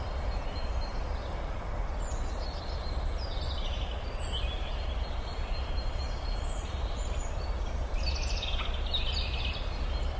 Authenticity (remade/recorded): recorded